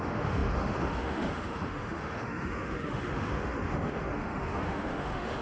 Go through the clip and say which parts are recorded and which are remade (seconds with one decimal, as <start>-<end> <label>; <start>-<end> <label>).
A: 0.0-5.4 remade